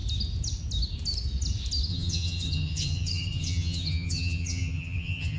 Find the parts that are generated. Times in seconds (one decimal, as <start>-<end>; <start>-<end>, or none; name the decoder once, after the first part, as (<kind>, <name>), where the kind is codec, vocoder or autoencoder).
1.9-5.4 (vocoder, HiFi-GAN)